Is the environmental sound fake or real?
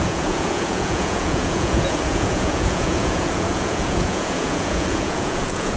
fake